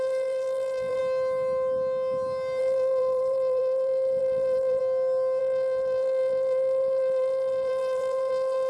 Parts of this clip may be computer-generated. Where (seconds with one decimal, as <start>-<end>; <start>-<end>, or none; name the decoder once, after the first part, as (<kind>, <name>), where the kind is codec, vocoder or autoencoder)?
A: 0.0-1.0 (vocoder, BigVGAN v2); 2.6-4.8; 5.4-8.7